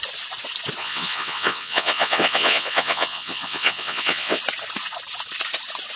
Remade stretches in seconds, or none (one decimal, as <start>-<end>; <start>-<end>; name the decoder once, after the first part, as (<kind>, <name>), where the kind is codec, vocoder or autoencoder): 0.8-4.4 (vocoder, WaveNeXt)